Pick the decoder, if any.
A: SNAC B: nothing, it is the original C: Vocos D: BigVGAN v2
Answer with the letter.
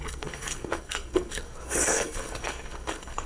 A